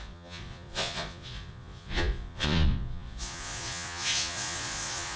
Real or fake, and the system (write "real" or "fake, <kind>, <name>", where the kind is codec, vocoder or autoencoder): fake, vocoder, Vocos